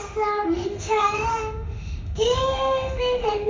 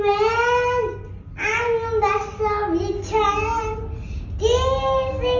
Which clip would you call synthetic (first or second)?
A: first